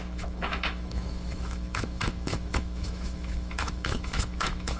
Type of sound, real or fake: fake